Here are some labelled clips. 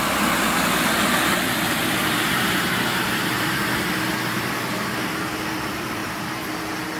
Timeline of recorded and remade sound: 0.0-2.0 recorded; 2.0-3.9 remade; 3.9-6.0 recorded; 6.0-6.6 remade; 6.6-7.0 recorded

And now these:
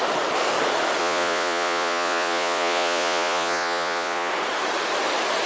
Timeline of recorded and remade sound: 0.0-1.0 recorded; 1.0-4.3 remade; 4.3-5.5 recorded

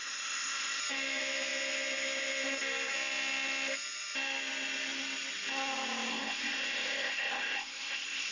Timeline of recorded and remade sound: 0.0-0.8 remade; 0.8-6.1 recorded; 6.1-8.3 remade

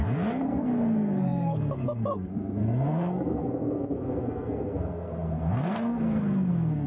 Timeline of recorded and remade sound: 0.0-6.9 remade

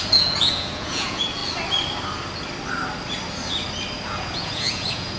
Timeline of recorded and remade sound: 0.0-1.4 remade; 1.4-4.0 recorded; 4.0-5.2 remade

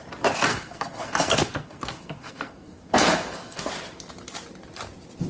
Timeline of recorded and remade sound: 0.0-0.5 recorded; 0.5-3.7 remade; 3.7-5.3 recorded

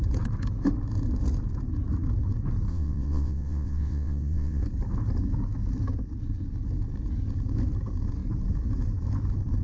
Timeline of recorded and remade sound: 0.0-2.7 recorded; 2.7-4.6 remade; 4.6-9.6 recorded